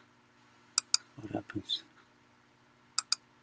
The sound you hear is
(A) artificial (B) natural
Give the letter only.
B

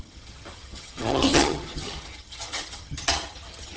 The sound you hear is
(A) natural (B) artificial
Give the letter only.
B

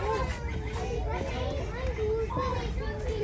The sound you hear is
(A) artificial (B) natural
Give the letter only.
B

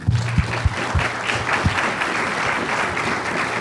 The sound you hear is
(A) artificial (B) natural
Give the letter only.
B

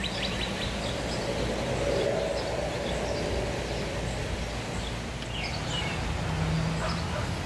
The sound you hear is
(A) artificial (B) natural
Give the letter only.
B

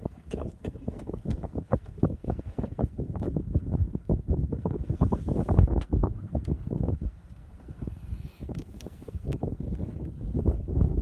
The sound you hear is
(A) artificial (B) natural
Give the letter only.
A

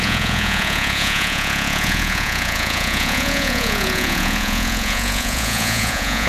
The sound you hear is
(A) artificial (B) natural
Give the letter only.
A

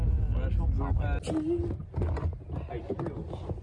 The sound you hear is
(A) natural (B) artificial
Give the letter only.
A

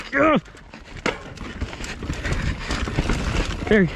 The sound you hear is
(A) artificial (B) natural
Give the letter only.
B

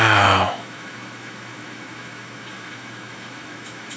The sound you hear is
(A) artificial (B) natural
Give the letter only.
A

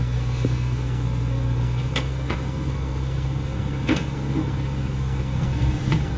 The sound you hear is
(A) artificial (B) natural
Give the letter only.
A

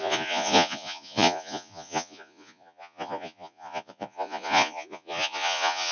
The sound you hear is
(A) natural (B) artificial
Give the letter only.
B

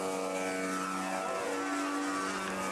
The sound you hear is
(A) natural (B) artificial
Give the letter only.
A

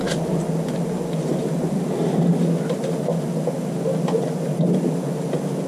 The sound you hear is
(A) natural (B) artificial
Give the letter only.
A